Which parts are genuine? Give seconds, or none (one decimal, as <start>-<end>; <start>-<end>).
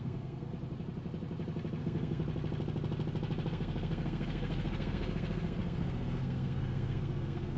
0.5-1.8; 2.2-3.5